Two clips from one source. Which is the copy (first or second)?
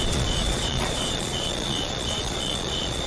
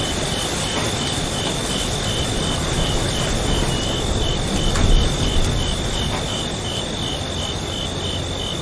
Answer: first